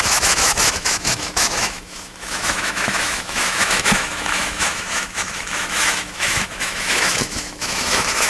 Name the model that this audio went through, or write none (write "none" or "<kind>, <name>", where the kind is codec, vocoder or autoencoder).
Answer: autoencoder, DAC-VAE